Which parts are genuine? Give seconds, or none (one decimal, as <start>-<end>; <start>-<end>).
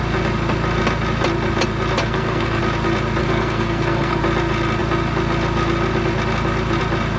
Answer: 0.0-2.0; 2.6-3.2; 4.2-7.2